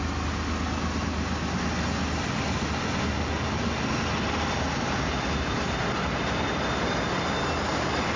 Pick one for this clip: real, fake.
real